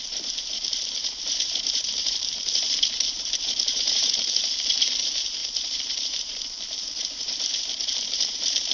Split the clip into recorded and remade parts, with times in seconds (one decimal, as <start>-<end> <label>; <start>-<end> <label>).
0.0-8.7 remade